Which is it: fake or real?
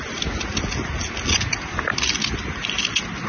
real